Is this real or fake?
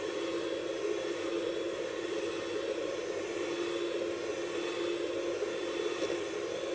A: real